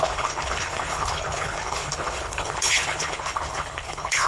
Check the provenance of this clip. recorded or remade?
remade